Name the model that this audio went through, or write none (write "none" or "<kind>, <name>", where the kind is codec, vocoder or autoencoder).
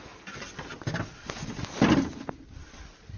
none